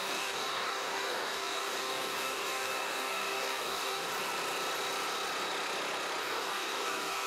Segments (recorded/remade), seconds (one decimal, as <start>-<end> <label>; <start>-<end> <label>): 0.0-4.1 remade; 4.1-6.2 recorded; 6.2-7.3 remade